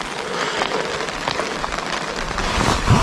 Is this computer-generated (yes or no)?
no